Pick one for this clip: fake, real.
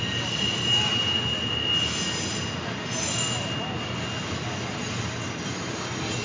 real